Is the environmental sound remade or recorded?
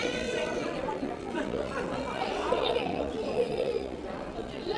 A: remade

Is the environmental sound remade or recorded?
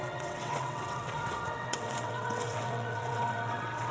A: remade